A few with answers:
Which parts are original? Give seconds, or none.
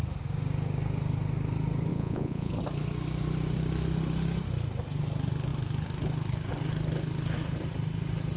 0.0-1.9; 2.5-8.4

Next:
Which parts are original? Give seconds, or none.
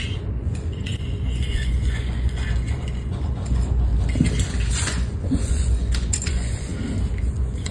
3.9-4.7; 6.7-7.3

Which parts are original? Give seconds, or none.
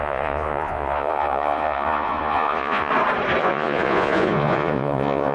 2.9-3.4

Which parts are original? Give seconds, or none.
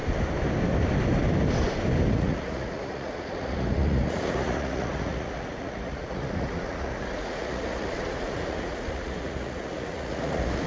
0.0-2.1